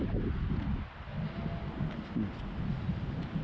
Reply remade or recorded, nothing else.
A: recorded